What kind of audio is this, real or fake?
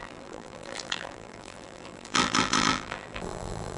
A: fake